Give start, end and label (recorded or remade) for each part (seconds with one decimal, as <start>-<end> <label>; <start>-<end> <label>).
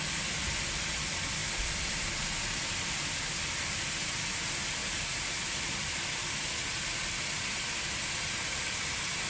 0.0-1.4 recorded; 1.4-2.1 remade; 2.1-4.8 recorded; 4.8-6.1 remade; 6.1-9.3 recorded